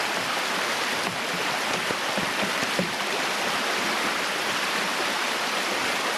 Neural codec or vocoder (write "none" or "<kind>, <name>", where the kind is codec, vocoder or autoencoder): vocoder, BigVGAN v2